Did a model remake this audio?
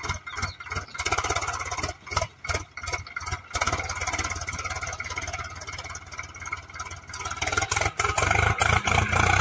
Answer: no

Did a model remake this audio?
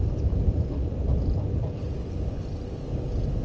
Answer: no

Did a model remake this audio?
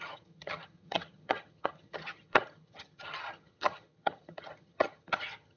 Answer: yes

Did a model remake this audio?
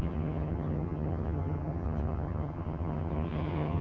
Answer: yes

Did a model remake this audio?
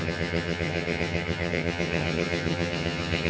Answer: yes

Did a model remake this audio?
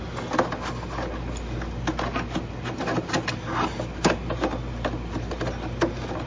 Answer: no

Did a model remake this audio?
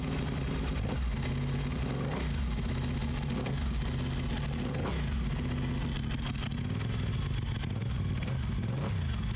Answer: no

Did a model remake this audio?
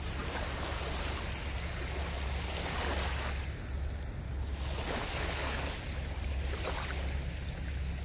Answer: no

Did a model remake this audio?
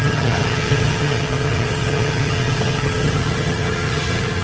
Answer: yes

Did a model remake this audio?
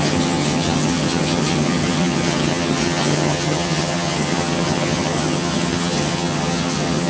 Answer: yes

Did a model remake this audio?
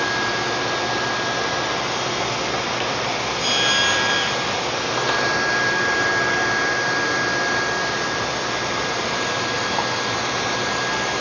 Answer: no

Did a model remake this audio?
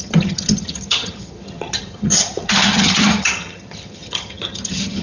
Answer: yes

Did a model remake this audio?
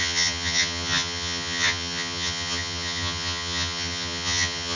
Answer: yes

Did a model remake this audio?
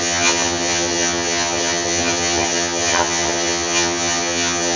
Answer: yes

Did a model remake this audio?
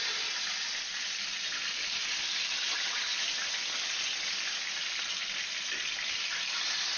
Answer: no